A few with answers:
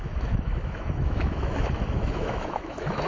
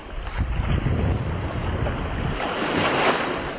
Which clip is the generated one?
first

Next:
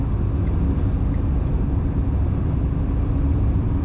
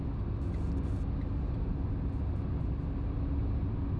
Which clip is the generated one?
first